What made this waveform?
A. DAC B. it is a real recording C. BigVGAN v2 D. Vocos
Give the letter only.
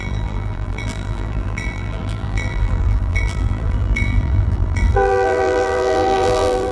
C